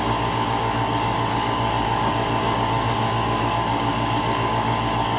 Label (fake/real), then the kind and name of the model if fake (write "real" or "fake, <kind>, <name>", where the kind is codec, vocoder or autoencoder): fake, codec, DAC